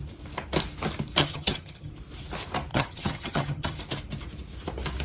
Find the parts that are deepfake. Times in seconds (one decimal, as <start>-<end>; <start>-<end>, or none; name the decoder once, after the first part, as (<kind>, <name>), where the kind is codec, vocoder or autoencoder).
1.2-1.9 (vocoder, HiFi-GAN); 2.7-3.8